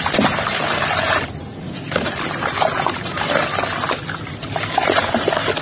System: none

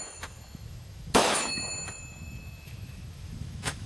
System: autoencoder, DAC-VAE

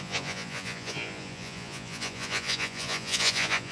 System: vocoder, Vocos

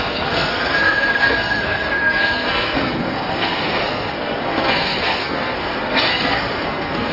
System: codec, SNAC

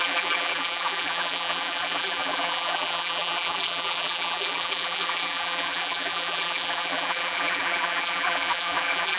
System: vocoder, BigVGAN v2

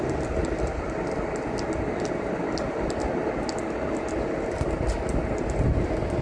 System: none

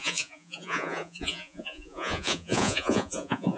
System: vocoder, Vocos